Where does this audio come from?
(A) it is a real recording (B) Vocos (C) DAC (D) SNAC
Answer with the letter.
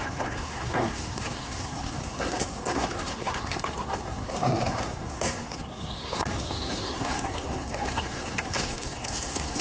D